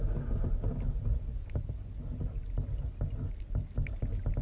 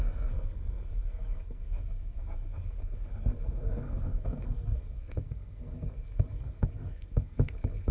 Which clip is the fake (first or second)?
second